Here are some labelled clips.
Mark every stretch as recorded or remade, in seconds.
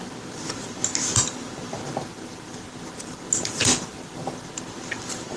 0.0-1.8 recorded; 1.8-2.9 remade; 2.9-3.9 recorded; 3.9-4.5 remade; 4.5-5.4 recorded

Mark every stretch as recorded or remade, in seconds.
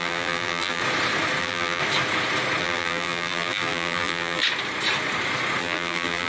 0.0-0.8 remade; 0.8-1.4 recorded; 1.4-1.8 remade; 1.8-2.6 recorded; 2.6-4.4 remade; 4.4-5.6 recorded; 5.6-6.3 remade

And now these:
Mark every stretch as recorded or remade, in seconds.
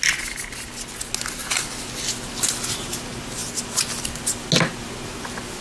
0.0-1.4 recorded; 1.4-1.9 remade; 1.9-5.6 recorded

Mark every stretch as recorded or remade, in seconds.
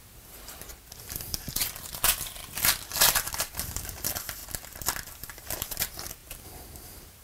0.0-0.7 remade; 0.7-1.3 recorded; 1.3-2.4 remade; 2.4-2.9 recorded; 2.9-4.4 remade; 4.4-5.2 recorded; 5.2-7.2 remade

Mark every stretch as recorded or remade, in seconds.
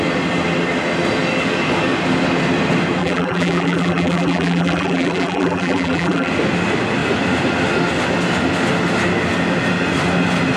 0.0-3.0 recorded; 3.0-6.3 remade; 6.3-10.6 recorded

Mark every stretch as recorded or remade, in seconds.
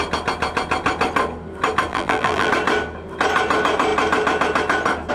0.0-1.9 recorded; 1.9-2.5 remade; 2.5-5.1 recorded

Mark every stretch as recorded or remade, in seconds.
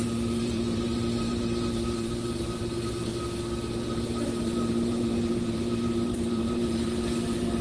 0.0-3.1 remade; 3.1-3.9 recorded; 3.9-7.6 remade